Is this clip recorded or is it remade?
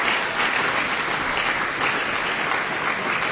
recorded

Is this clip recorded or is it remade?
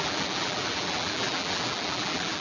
remade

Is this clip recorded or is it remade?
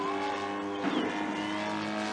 recorded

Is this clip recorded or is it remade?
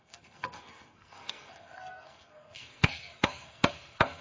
remade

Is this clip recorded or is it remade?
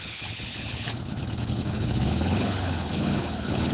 remade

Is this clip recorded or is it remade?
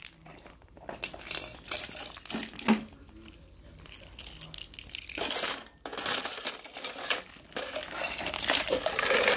recorded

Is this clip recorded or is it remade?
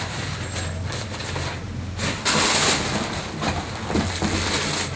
recorded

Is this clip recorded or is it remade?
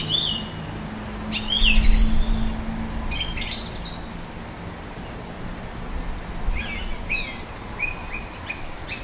recorded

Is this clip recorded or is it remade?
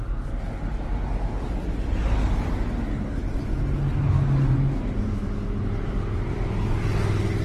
recorded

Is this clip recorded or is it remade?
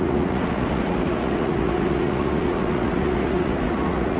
remade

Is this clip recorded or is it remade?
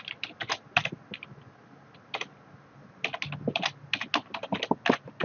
recorded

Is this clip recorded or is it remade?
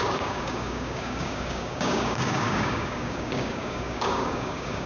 remade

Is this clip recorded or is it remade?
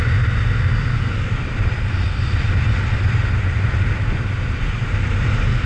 recorded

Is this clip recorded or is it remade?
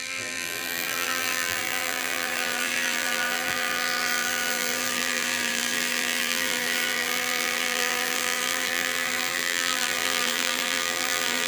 remade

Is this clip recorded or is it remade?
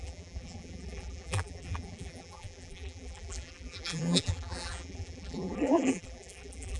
remade